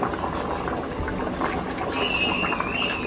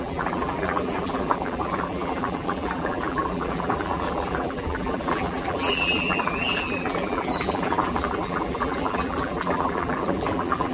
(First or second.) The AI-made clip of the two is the second